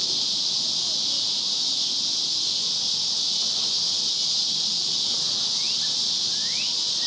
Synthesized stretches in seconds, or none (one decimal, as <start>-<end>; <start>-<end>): none